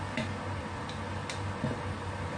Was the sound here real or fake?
real